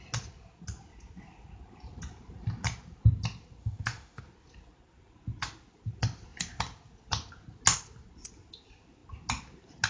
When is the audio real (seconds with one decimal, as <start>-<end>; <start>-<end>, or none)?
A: 0.0-3.6; 4.2-9.9